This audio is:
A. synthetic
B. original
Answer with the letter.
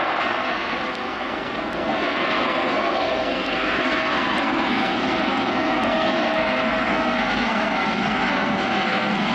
A